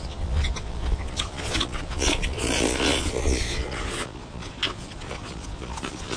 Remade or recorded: remade